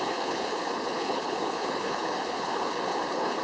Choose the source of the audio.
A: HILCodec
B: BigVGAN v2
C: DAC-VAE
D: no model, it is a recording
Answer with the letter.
A